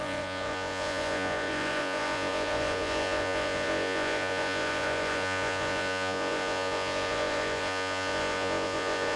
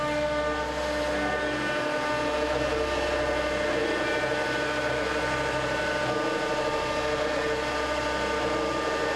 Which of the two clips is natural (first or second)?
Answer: second